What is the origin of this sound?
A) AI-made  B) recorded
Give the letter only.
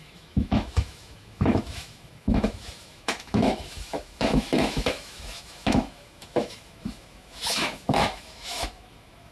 A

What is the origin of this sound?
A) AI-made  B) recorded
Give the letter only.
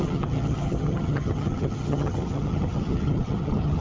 A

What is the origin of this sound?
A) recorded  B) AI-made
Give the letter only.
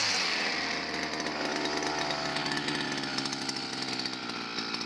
A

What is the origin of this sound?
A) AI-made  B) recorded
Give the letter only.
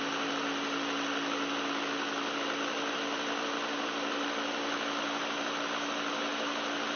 B